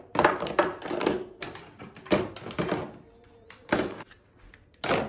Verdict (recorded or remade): recorded